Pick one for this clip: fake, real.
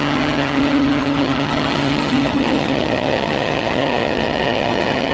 fake